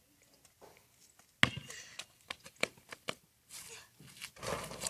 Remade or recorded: recorded